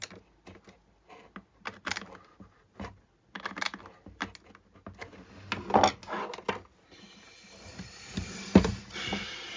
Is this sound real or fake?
real